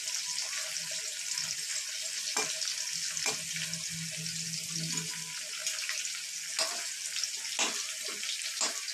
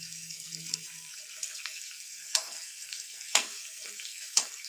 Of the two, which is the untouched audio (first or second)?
first